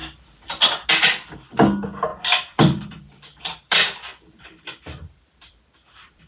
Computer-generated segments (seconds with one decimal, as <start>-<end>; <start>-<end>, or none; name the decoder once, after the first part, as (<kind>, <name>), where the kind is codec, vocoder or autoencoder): 0.0-0.9 (vocoder, BigVGAN v2); 2.1-6.3